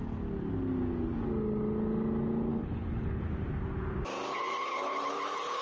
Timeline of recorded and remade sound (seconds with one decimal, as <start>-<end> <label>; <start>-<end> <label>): 0.0-2.5 recorded; 2.5-3.2 remade; 3.2-4.3 recorded; 4.3-5.6 remade